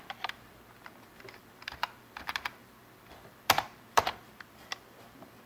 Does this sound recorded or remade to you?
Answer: remade